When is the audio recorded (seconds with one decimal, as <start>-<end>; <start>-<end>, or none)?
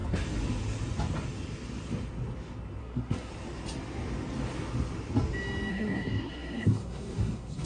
0.0-2.8; 3.3-5.7